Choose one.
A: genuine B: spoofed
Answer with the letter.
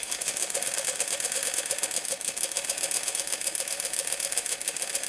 B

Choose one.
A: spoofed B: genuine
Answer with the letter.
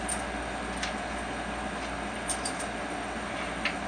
B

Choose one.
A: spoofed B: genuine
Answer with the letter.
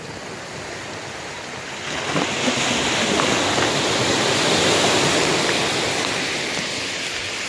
B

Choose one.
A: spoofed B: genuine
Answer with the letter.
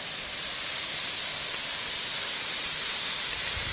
B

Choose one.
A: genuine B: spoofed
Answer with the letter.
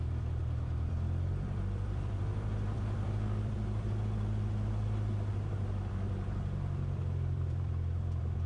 B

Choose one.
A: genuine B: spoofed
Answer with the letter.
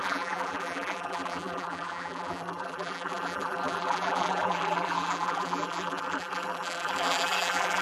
B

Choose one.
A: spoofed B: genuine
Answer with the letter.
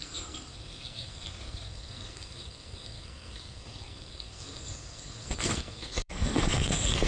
A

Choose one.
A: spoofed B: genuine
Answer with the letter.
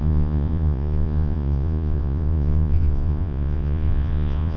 A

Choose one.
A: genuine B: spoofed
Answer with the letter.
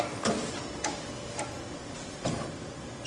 A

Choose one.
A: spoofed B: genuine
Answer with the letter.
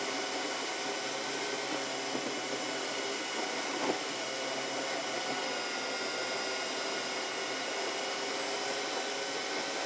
B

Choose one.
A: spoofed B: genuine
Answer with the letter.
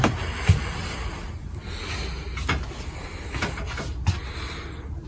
B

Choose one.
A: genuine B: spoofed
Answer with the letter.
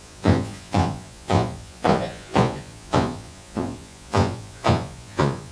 B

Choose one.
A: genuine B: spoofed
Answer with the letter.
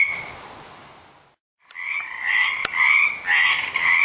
A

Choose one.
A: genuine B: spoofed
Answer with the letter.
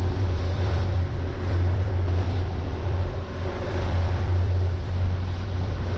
B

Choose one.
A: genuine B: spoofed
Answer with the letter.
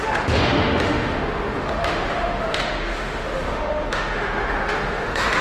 B